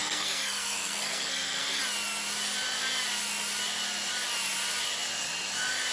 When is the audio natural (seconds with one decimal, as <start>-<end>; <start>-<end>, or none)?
1.8-5.9